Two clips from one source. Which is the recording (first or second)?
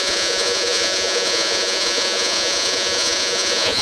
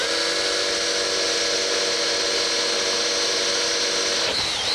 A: second